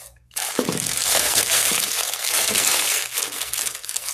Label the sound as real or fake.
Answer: fake